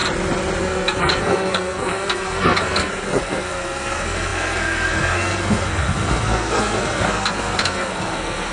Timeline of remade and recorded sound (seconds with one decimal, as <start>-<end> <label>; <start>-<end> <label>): 0.0-0.6 recorded; 0.6-8.5 remade